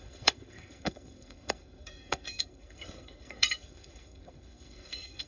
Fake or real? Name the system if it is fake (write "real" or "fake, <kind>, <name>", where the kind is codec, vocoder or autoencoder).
fake, codec, SNAC